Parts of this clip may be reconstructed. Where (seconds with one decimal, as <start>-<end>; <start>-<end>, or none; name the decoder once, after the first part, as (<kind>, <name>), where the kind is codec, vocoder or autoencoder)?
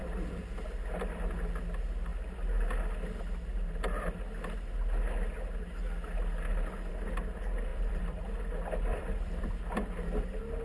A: 7.7-8.4 (vocoder, BigVGAN v2); 8.9-9.5